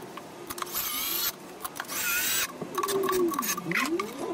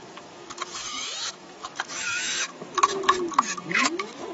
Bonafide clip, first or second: first